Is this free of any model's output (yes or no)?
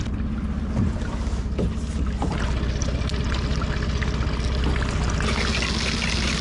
yes